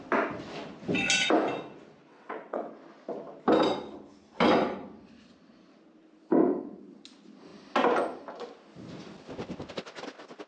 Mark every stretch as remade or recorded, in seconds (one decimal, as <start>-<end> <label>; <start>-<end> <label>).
0.0-2.1 recorded; 2.1-2.7 remade; 2.7-10.5 recorded